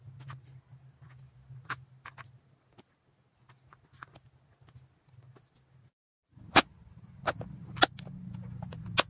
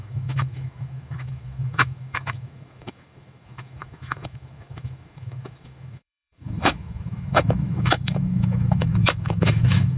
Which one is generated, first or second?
second